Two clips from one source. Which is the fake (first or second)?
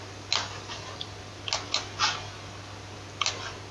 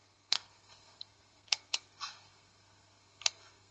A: second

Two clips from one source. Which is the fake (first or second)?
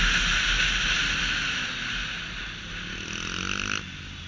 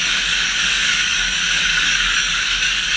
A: second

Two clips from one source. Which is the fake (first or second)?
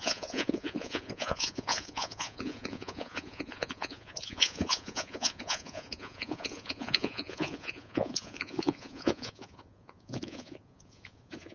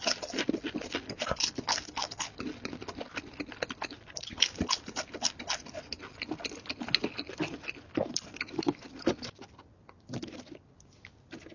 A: first